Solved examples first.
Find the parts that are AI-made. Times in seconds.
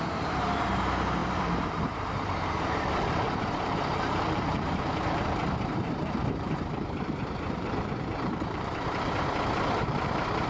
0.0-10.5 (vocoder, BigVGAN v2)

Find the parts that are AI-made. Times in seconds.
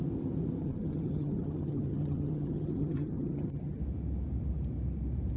0.6-3.8 (vocoder, HiFi-GAN)